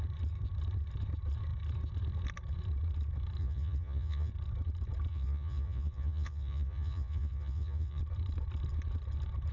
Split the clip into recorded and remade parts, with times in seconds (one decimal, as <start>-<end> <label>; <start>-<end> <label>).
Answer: 0.0-3.4 recorded; 3.4-4.3 remade; 4.3-5.1 recorded; 5.1-8.0 remade; 8.0-9.5 recorded